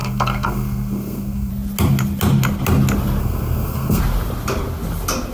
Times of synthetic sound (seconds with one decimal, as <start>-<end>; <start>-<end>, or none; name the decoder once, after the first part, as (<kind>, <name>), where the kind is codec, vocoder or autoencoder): 0.0-1.5 (codec, SNAC); 3.2-4.0